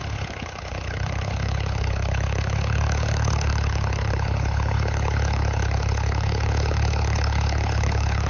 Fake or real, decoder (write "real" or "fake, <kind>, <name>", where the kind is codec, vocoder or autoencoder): fake, codec, HILCodec